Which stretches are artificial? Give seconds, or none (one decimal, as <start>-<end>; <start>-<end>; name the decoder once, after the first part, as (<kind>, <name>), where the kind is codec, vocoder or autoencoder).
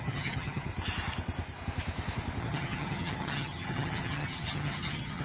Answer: 0.0-0.7 (vocoder, HiFi-GAN); 2.4-5.2